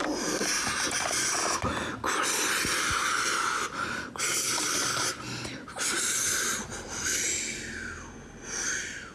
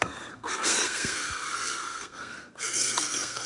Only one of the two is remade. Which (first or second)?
second